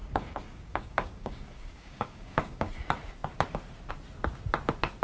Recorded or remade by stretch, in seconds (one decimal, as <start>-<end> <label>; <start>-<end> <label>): 0.0-2.7 remade; 2.7-5.0 recorded

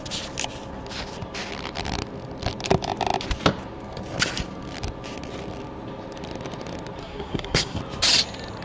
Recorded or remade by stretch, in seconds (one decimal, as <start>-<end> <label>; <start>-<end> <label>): 0.0-7.0 recorded; 7.0-7.8 remade; 7.8-8.6 recorded

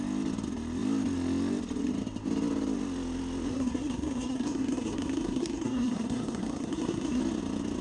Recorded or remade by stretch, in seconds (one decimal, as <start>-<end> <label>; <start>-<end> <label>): 0.0-3.5 recorded; 3.5-7.2 remade; 7.2-7.8 recorded

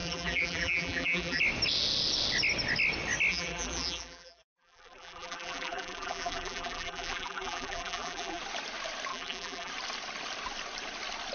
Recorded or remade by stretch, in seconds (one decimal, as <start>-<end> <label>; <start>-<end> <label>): 0.0-1.4 remade; 1.4-3.3 recorded; 3.3-8.4 remade; 8.4-9.1 recorded; 9.1-9.7 remade; 9.7-11.3 recorded

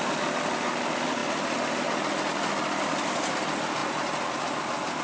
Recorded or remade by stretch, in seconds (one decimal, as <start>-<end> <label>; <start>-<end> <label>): 0.0-5.0 recorded

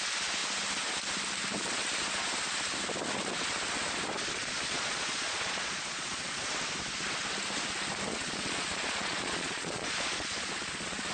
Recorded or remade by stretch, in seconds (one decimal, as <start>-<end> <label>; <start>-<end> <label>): 0.0-4.4 recorded; 4.4-6.5 remade; 6.5-8.1 recorded; 8.1-11.1 remade